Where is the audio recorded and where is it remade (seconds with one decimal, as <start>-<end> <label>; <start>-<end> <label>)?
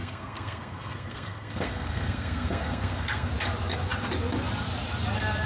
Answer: 0.0-3.3 remade; 3.3-5.5 recorded